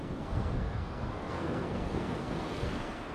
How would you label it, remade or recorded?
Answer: remade